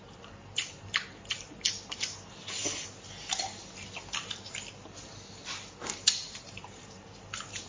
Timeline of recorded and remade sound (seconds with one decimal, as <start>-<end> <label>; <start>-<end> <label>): 0.0-7.7 recorded